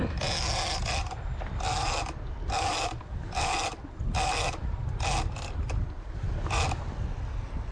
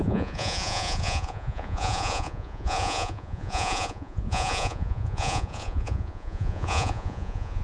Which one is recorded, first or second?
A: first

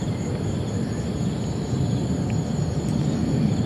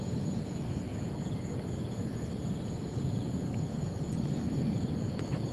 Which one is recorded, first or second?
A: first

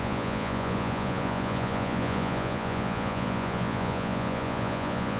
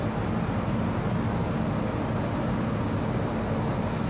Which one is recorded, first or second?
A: second